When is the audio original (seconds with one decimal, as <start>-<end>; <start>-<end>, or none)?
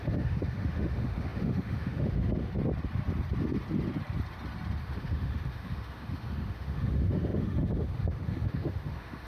2.5-4.8